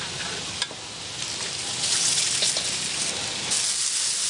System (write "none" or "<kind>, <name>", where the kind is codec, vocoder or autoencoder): none